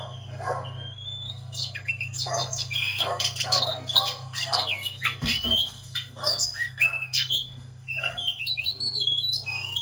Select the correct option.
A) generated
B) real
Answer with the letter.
A